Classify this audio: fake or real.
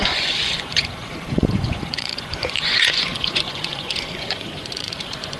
fake